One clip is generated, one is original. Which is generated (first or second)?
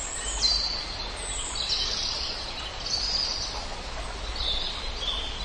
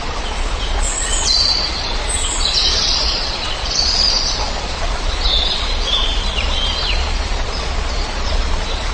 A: second